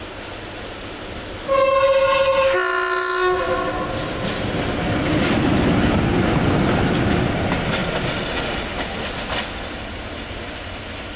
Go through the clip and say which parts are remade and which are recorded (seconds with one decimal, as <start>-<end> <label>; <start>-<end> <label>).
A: 0.0-11.2 recorded